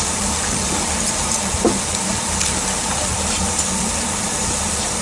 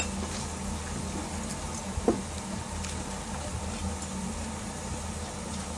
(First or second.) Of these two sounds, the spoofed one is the first